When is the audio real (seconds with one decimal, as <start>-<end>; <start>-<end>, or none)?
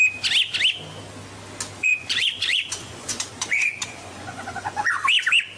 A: 0.0-1.8; 4.9-5.6